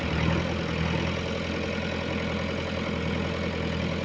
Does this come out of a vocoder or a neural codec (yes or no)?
no